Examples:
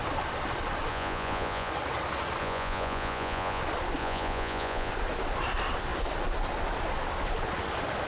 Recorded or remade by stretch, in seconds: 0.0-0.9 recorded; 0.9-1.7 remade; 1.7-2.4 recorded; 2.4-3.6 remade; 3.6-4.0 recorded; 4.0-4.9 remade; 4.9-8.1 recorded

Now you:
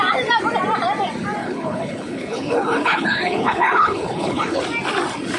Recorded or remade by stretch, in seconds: 0.0-1.4 recorded; 1.4-4.6 remade; 4.6-5.4 recorded

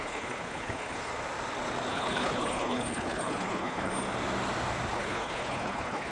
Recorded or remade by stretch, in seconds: 0.0-1.1 remade; 1.1-1.9 recorded; 1.9-3.9 remade; 3.9-4.9 recorded; 4.9-6.1 remade

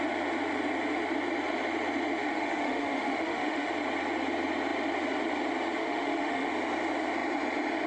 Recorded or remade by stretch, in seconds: 0.0-2.2 recorded; 2.2-3.7 remade; 3.7-5.8 recorded; 5.8-6.5 remade; 6.5-7.9 recorded

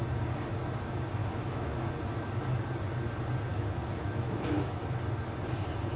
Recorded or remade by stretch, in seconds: 0.0-1.2 recorded; 1.2-1.9 remade; 1.9-3.5 recorded; 3.5-4.8 remade; 4.8-6.0 recorded

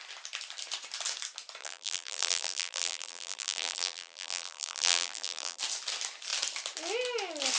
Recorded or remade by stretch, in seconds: 0.0-1.6 recorded; 1.6-5.6 remade; 5.6-7.6 recorded

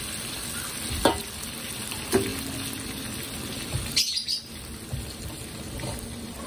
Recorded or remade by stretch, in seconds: 0.0-6.5 recorded

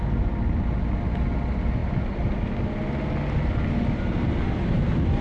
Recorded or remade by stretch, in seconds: 0.0-5.2 recorded